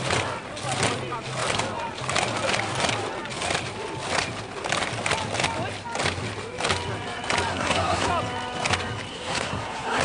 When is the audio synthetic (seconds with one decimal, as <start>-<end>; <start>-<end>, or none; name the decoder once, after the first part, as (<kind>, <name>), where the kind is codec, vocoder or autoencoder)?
7.5-8.1 (codec, SNAC); 9.1-10.0